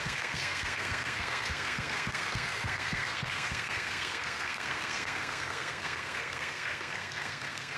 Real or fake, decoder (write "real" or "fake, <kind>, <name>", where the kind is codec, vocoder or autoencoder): fake, codec, SNAC